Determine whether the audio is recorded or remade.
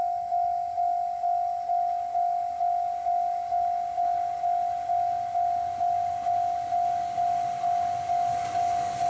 recorded